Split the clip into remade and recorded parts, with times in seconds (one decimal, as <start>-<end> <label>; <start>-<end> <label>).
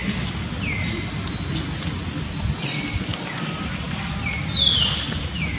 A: 0.0-5.6 recorded